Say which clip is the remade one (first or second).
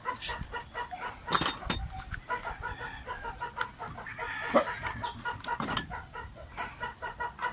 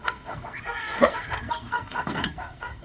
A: second